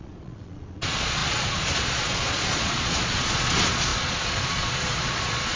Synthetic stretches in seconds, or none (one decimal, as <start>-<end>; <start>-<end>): 0.0-5.6

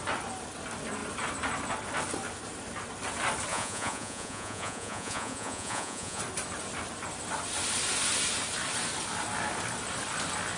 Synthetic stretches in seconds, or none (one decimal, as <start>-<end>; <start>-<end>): 3.5-6.2

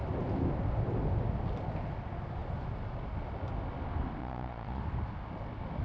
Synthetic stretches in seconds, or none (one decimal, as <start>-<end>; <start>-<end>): 4.2-4.8

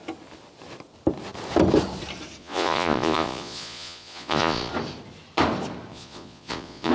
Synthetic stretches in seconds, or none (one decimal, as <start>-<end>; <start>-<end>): 2.4-4.7; 5.9-6.9

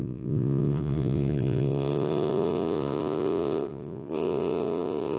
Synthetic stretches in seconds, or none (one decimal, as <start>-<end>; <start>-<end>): 0.0-5.2

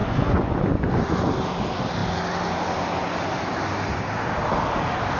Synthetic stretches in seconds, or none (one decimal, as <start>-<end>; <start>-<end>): 0.0-0.9